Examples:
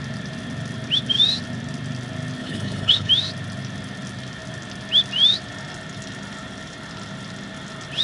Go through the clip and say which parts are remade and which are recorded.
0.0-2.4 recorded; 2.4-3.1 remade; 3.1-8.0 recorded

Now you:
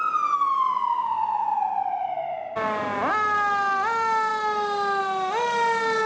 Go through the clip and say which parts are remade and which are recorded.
0.0-6.1 recorded

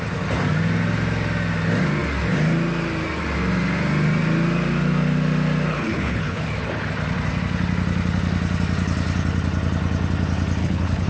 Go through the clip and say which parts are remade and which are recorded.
0.0-5.7 recorded; 5.7-6.4 remade; 6.4-10.6 recorded; 10.6-11.1 remade

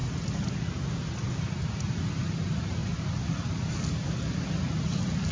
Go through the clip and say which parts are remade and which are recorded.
0.0-5.3 recorded

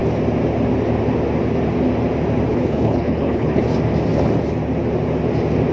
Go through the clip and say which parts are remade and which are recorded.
0.0-2.5 recorded; 2.5-3.6 remade; 3.6-5.7 recorded